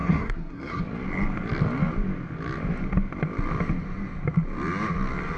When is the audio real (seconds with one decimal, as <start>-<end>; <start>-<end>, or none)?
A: 0.8-5.4

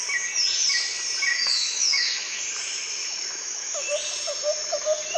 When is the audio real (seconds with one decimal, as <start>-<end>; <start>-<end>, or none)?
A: 0.0-1.3; 2.4-3.0; 3.9-5.2

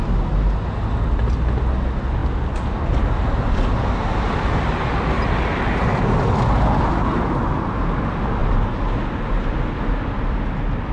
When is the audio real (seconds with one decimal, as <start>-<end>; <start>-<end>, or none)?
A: 0.0-10.9

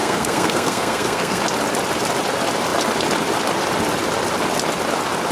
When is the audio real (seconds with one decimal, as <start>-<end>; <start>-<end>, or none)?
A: 1.4-5.3

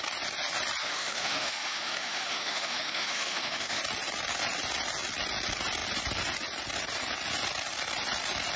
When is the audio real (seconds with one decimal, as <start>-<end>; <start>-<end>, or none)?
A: 0.0-0.8; 3.8-8.6